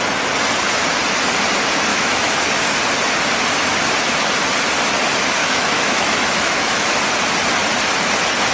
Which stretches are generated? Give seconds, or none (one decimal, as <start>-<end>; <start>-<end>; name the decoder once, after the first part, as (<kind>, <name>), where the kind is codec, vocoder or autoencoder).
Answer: 1.9-2.5 (autoencoder, DAC-VAE); 5.4-7.0

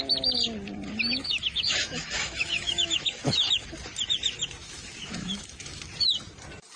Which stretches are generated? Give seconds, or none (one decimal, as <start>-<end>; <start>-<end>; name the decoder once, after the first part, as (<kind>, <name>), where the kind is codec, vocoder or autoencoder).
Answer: 1.2-3.7 (autoencoder, DAC-VAE); 4.6-5.9

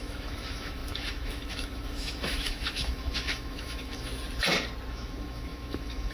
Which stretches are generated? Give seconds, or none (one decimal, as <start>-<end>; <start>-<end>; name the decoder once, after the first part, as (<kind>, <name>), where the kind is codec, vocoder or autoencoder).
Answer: 0.0-4.1 (autoencoder, DAC-VAE); 4.9-6.1